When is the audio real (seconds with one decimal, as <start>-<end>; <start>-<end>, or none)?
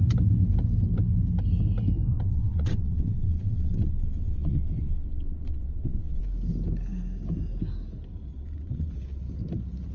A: 0.0-2.1; 6.2-8.3; 8.9-9.9